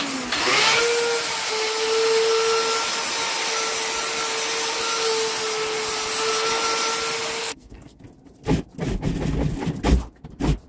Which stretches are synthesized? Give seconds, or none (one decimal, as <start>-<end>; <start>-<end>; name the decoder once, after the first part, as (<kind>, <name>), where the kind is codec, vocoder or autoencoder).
7.4-8.0 (codec, SNAC)